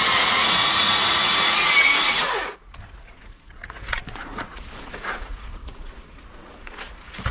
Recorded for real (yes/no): no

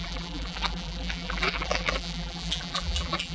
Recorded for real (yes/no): no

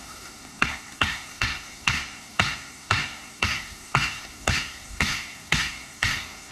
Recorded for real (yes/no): no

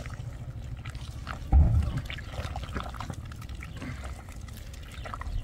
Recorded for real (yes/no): yes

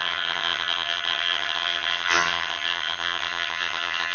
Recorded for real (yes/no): no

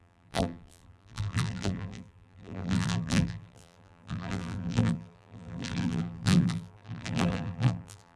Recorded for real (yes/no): no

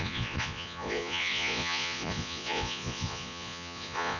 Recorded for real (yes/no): no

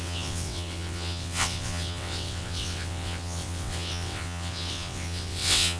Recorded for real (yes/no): no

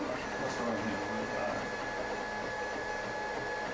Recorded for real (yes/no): yes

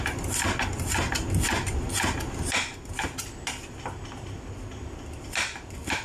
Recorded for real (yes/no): yes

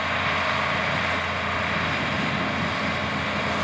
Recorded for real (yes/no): yes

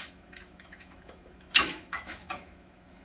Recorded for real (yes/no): no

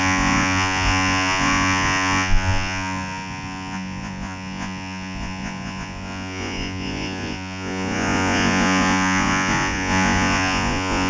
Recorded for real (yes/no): no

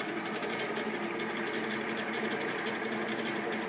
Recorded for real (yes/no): yes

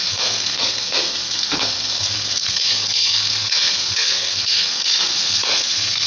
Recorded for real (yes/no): no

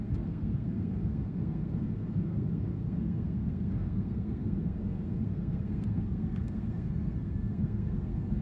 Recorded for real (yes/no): no